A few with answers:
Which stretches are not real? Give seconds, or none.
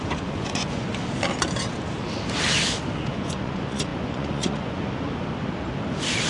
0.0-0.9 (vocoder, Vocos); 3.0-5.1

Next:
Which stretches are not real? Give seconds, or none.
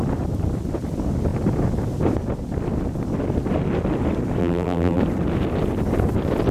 4.4-5.0 (vocoder, BigVGAN v2)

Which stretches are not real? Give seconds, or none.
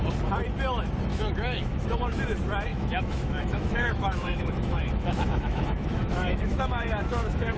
1.1-2.2 (autoencoder, DAC-VAE); 2.7-7.6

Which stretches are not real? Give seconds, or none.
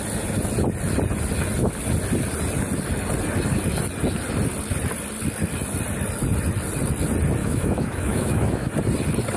7.4-8.7 (autoencoder, DAC-VAE)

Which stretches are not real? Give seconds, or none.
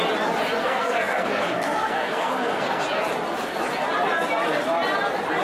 0.6-2.8 (codec, SNAC)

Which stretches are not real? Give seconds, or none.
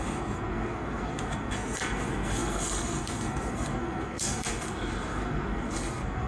0.0-6.3 (codec, SNAC)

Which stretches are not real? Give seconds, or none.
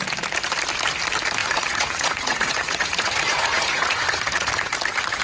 1.4-4.5 (vocoder, Vocos)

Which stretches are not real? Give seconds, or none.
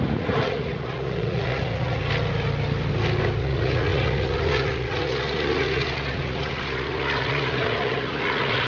0.0-2.0 (vocoder, Vocos); 3.4-8.7